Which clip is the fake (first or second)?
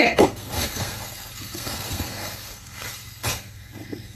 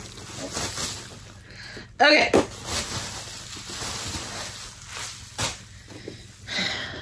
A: first